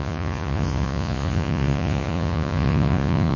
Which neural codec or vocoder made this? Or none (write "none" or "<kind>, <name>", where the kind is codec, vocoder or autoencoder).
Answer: vocoder, Vocos